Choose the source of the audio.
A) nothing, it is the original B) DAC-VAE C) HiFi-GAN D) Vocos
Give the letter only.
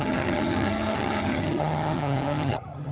C